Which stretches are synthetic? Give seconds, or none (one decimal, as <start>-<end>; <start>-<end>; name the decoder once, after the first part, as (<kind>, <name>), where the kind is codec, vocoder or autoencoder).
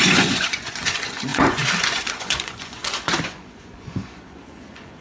0.0-5.0 (vocoder, Vocos)